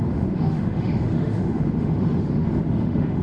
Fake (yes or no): yes